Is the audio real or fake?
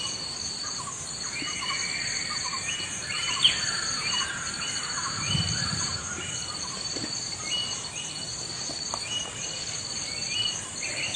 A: fake